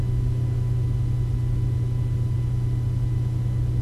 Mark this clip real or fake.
real